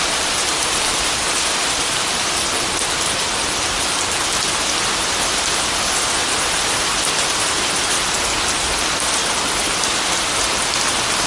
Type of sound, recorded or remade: recorded